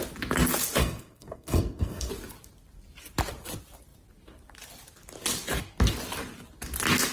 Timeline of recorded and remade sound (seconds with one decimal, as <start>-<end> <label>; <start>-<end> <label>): 0.0-0.8 recorded; 0.8-2.1 remade; 2.1-7.1 recorded